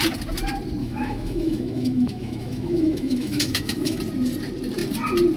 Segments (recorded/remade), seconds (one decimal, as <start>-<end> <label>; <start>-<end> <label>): 0.0-0.8 recorded; 0.8-4.0 remade; 4.0-5.4 recorded